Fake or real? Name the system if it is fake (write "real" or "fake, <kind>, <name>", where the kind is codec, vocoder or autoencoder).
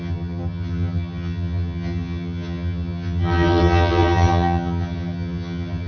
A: fake, vocoder, HiFi-GAN